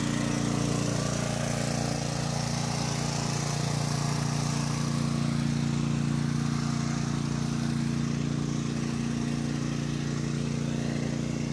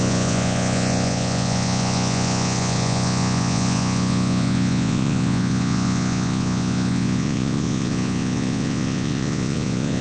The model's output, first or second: second